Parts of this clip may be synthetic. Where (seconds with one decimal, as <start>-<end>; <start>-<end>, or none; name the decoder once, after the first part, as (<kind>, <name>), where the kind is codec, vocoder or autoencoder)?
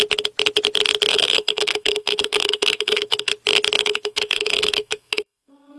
1.1-3.3 (codec, SNAC); 3.8-5.8